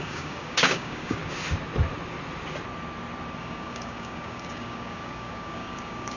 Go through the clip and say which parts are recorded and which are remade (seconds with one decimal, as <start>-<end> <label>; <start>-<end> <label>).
0.0-1.2 remade; 1.2-3.4 recorded; 3.4-6.2 remade